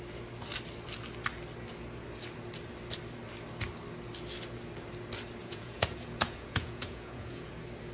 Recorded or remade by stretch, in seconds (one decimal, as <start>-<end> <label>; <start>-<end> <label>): 0.0-5.4 recorded; 5.4-7.5 remade; 7.5-7.9 recorded